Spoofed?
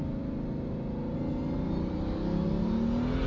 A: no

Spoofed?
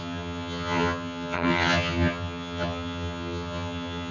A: yes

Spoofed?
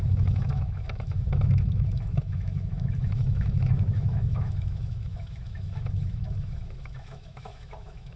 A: yes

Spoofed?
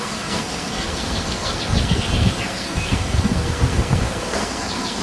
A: yes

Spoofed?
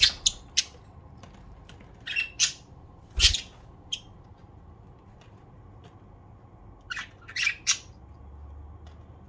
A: no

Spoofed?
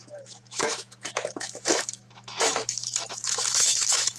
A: yes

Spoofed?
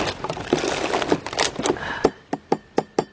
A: no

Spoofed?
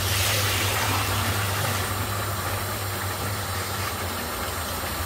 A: yes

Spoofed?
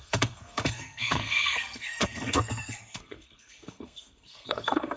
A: yes